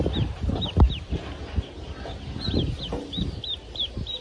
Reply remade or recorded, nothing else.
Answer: recorded